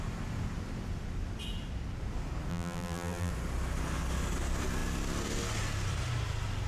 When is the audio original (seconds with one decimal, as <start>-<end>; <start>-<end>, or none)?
0.0-2.5; 3.3-6.7